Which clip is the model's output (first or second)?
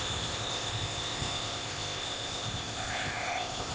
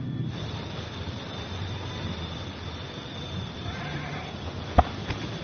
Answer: first